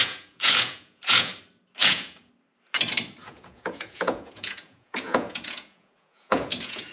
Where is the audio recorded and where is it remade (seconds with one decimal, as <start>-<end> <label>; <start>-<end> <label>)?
0.0-1.3 remade; 1.3-1.8 recorded; 1.8-2.3 remade; 2.3-3.2 recorded; 3.2-6.9 remade